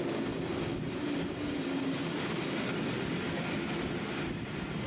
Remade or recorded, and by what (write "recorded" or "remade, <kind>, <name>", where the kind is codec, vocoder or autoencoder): recorded